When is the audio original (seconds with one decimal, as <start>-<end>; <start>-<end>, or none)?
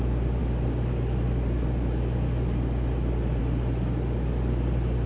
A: 0.0-5.1